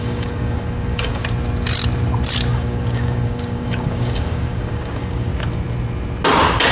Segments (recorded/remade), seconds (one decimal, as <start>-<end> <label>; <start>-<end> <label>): 0.0-1.2 remade; 1.2-2.5 recorded; 2.5-5.3 remade; 5.3-6.7 recorded